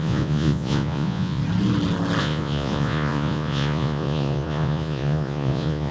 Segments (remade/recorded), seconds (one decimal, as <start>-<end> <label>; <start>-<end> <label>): 0.0-1.4 remade; 1.4-2.2 recorded; 2.2-5.9 remade